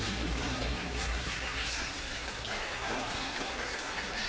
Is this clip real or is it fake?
fake